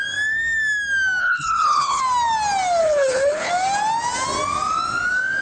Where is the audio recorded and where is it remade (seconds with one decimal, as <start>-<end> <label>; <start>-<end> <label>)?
0.0-1.2 recorded; 1.2-2.0 remade; 2.0-2.8 recorded; 2.8-3.5 remade; 3.5-5.4 recorded